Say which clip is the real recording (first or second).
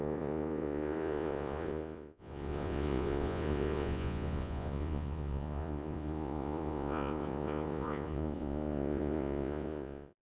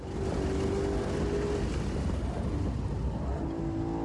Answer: second